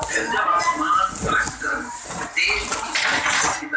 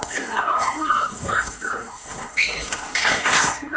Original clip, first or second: first